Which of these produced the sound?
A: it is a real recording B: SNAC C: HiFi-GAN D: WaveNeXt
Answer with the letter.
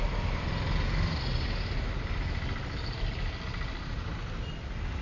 A